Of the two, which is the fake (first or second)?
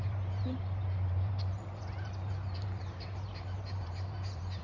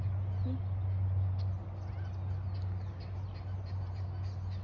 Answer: first